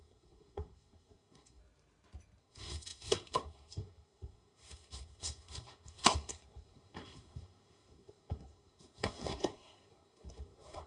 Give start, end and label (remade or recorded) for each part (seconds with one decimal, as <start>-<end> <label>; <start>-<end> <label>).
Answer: 0.0-1.6 remade; 1.6-2.4 recorded; 2.4-10.9 remade